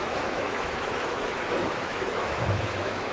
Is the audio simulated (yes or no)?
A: yes